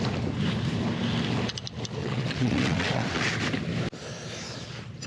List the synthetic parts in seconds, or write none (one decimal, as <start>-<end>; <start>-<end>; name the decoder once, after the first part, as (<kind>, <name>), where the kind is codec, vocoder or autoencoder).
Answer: 2.0-3.3 (vocoder, WaveNeXt)